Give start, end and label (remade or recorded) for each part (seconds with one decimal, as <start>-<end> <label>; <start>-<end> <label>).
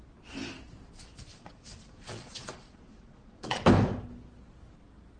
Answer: 0.0-1.3 recorded; 1.3-3.6 remade; 3.6-5.2 recorded